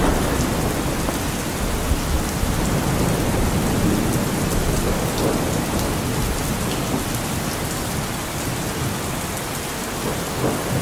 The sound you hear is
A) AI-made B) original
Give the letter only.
B